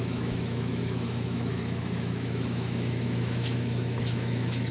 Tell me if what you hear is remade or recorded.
remade